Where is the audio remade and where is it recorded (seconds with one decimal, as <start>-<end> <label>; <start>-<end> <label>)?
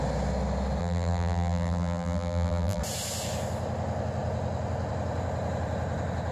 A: 0.0-0.8 recorded; 0.8-2.8 remade; 2.8-6.3 recorded